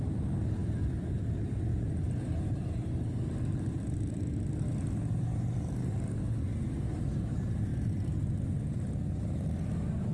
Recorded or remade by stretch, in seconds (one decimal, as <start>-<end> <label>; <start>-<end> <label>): 0.0-10.1 recorded